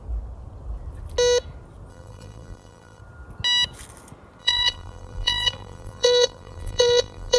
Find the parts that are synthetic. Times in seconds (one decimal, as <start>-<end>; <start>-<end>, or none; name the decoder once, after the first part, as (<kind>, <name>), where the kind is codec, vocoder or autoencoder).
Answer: 1.9-3.0 (vocoder, BigVGAN v2); 4.4-7.4